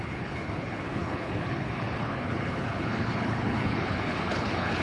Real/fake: fake